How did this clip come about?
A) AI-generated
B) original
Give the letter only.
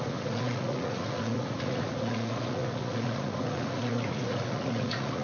A